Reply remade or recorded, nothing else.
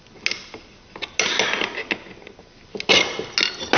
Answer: recorded